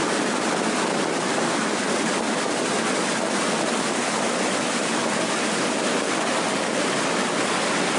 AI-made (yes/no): no